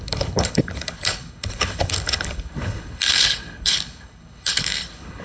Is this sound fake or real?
fake